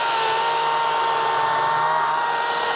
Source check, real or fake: real